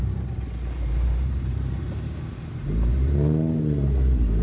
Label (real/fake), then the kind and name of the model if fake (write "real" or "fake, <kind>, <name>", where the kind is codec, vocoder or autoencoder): fake, vocoder, BigVGAN v2